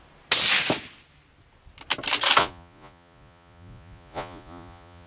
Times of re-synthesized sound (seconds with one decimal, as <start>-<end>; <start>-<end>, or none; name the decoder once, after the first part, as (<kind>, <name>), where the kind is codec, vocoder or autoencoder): 2.4-5.1 (vocoder, Vocos)